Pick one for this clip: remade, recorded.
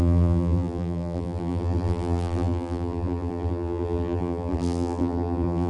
remade